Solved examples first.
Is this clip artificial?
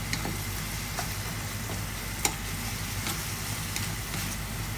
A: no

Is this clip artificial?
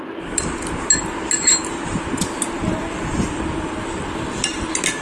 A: no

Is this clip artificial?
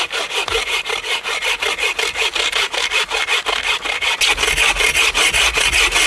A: no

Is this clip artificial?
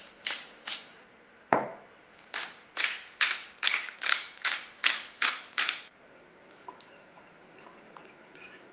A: yes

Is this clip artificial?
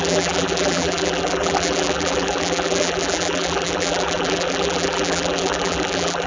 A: yes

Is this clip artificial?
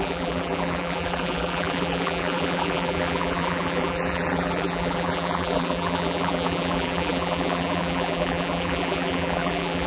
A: yes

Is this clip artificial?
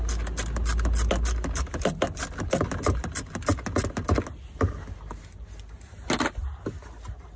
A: no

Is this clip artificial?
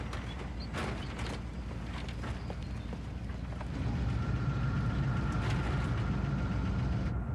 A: no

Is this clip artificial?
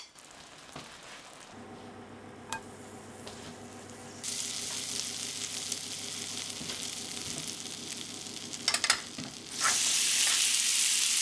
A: no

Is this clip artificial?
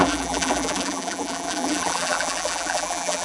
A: yes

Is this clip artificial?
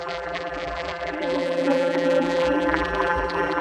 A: yes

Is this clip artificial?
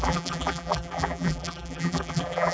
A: yes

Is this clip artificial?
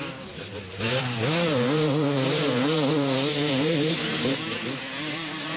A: yes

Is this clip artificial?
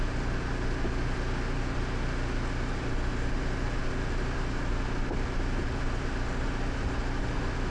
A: no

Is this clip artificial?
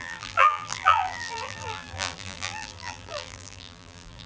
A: yes